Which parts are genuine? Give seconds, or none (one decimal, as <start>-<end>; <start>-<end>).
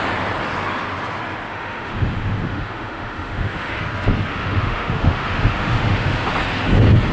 0.0-1.5; 3.8-4.3; 6.3-7.1